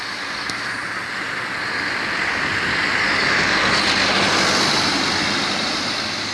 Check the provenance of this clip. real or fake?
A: real